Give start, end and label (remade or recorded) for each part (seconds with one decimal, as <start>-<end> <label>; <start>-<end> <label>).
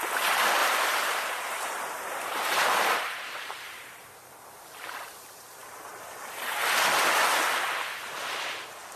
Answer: 0.0-0.6 recorded; 0.6-4.3 remade; 4.3-9.0 recorded